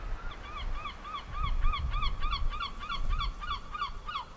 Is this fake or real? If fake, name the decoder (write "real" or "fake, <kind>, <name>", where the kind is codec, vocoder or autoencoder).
real